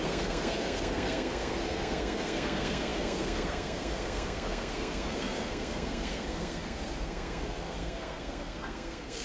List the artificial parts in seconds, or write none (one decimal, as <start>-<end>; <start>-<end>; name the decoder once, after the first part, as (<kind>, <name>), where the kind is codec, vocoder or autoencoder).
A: 0.0-9.2 (codec, SNAC)